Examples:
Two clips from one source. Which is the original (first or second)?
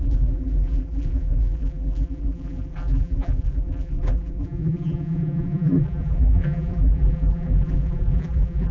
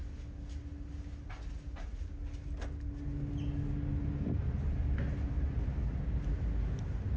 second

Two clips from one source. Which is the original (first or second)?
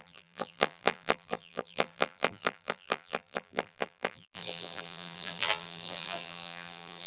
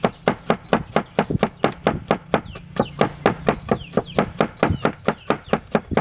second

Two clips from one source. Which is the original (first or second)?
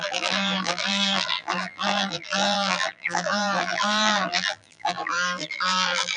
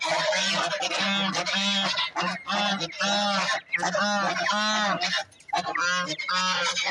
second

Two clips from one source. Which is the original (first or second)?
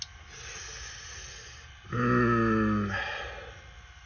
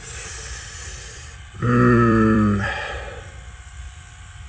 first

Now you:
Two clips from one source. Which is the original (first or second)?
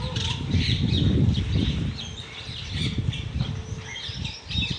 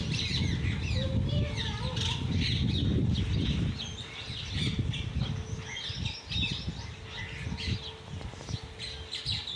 second